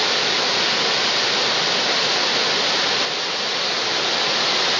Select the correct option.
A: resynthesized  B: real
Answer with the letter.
B